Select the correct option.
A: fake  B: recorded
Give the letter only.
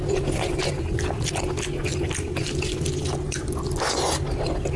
B